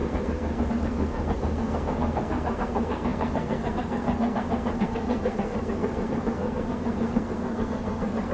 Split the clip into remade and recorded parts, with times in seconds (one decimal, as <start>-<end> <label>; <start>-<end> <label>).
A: 0.0-8.3 remade